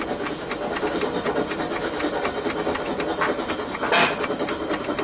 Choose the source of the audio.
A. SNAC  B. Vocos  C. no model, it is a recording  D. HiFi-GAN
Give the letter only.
C